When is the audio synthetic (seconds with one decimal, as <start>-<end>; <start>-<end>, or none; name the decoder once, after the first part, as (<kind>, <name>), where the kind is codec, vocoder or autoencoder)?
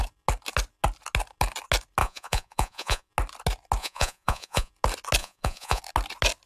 2.0-3.1 (vocoder, Vocos); 3.8-4.7; 5.2-5.8